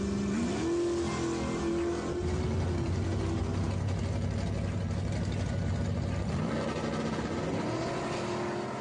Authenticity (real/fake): real